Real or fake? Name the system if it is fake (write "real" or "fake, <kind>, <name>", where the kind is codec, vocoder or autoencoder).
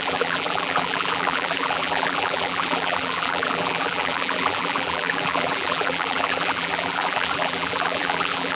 fake, vocoder, BigVGAN v2